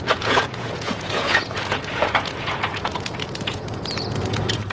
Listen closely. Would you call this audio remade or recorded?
remade